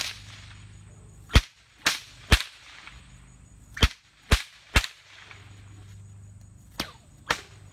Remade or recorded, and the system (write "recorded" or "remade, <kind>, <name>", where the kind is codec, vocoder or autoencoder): recorded